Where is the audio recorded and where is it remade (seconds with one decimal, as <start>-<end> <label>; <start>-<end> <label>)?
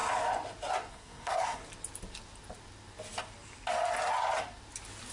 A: 0.0-0.9 recorded; 0.9-1.6 remade; 1.6-5.1 recorded